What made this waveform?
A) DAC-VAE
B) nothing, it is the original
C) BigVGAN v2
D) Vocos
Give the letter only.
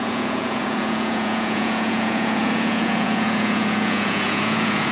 D